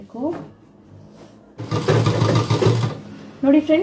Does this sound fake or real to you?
real